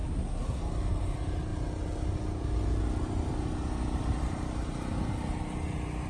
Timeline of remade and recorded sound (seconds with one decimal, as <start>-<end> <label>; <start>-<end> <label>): 0.0-0.6 remade; 0.6-6.1 recorded